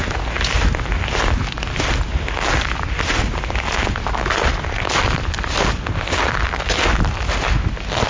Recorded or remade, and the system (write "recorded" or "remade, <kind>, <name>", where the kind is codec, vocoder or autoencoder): recorded